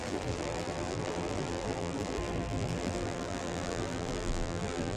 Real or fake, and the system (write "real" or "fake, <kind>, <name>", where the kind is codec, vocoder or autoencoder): fake, vocoder, BigVGAN v2